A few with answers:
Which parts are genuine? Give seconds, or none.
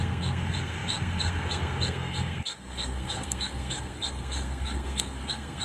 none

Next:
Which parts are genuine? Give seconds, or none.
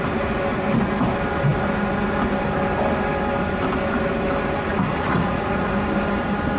0.0-4.7; 5.7-6.6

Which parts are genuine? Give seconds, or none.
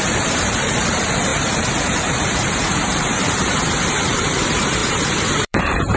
none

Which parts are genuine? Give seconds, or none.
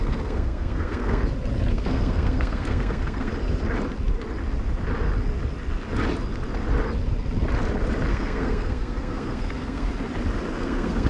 1.2-1.7; 3.3-8.1; 9.9-10.6